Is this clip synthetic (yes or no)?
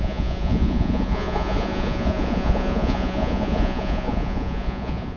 yes